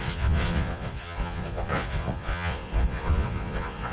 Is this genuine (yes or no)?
no